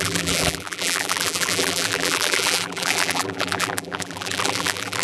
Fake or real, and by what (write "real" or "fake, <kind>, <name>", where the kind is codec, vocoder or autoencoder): fake, vocoder, BigVGAN v2